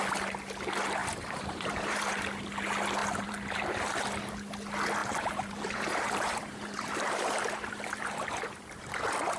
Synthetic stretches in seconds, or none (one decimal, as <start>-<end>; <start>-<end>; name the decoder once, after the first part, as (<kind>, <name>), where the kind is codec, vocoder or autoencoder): 1.0-2.1 (vocoder, BigVGAN v2); 3.0-3.9; 5.0-8.9